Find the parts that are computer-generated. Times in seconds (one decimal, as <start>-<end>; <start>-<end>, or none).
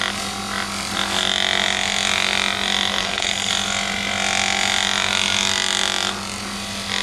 3.0-3.5